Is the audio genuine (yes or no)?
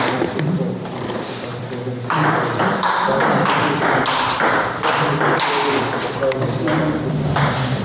no